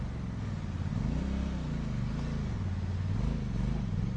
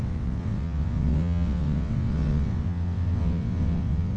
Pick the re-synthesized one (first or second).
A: second